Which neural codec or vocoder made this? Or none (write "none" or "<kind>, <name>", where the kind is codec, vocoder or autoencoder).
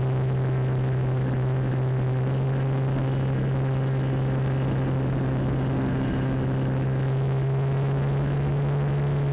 none